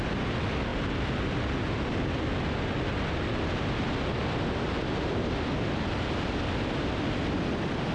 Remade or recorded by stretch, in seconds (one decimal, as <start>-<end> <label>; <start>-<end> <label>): 0.0-7.9 recorded